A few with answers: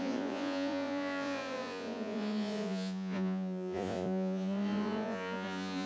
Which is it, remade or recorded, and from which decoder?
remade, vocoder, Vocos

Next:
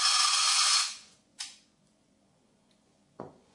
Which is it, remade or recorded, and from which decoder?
remade, vocoder, Vocos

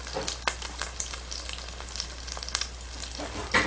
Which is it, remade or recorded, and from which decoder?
recorded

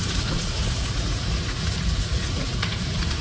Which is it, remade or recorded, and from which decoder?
remade, vocoder, Vocos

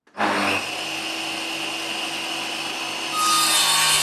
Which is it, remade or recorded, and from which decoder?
recorded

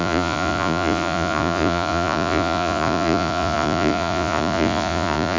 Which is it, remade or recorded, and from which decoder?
remade, vocoder, Vocos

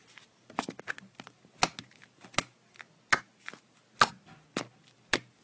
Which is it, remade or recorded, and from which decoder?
recorded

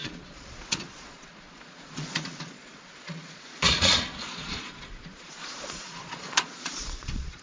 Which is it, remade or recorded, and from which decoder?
remade, vocoder, Vocos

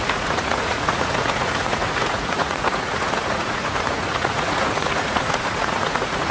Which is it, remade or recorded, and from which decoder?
remade, vocoder, Vocos